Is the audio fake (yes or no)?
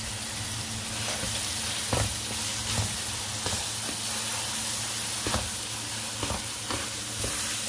no